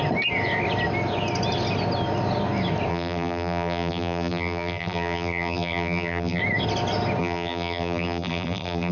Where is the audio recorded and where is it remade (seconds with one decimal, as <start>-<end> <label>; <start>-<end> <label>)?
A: 0.0-2.9 recorded; 2.9-6.4 remade; 6.4-7.2 recorded; 7.2-8.9 remade